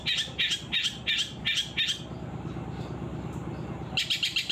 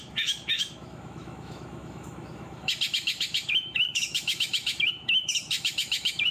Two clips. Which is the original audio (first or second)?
first